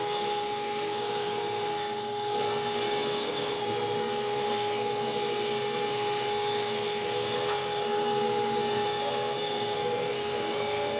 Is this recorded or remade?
remade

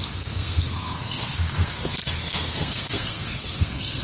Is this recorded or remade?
remade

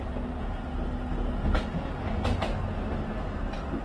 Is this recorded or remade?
recorded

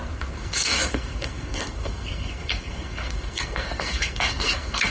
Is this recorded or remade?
remade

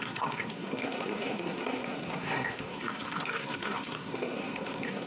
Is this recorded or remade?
remade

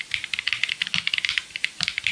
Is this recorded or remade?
recorded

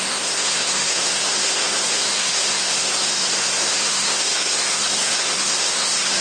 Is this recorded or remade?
remade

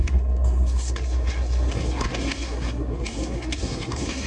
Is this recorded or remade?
remade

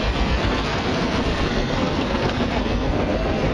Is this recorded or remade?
remade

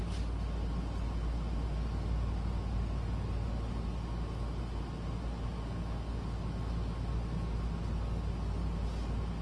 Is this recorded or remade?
recorded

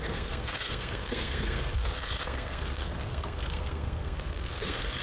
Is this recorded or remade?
remade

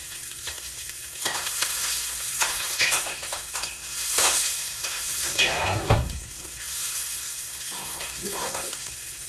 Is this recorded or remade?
remade